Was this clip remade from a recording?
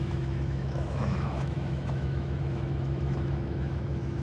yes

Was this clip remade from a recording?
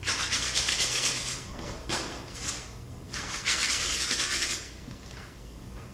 yes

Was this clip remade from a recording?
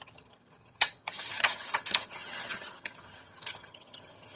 yes